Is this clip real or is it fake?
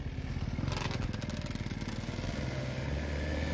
real